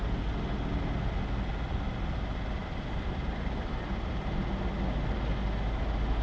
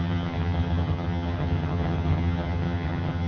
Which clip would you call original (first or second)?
first